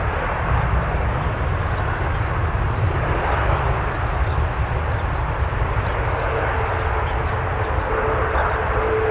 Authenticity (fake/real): real